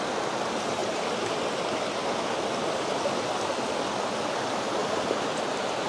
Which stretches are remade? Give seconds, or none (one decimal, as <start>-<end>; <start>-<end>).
4.8-5.3